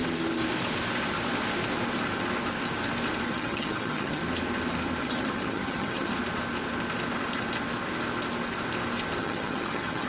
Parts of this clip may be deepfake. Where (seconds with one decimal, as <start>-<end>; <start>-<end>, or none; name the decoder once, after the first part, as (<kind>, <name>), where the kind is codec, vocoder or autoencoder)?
3.3-4.2 (vocoder, HiFi-GAN); 5.0-6.1; 9.2-10.1